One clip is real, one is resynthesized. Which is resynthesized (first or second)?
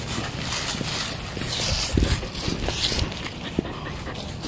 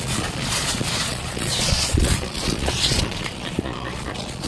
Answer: second